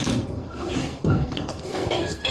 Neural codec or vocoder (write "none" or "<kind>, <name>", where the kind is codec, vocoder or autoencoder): codec, SNAC